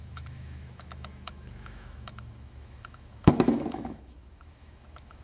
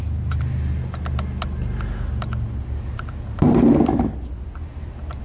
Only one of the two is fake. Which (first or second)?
first